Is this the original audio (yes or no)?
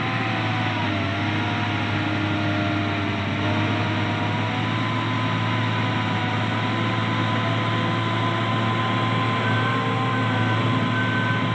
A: yes